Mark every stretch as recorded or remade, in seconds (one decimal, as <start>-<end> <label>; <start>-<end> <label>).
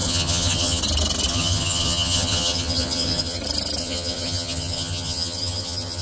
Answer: 0.0-0.8 remade; 0.8-1.3 recorded; 1.3-3.4 remade; 3.4-3.8 recorded; 3.8-6.0 remade